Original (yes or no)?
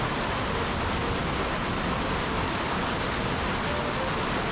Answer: yes